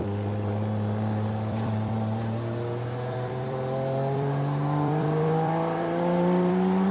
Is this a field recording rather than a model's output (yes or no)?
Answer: no